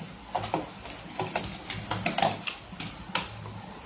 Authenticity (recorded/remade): recorded